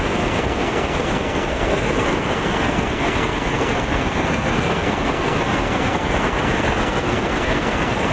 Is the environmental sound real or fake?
fake